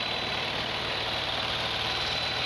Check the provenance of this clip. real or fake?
fake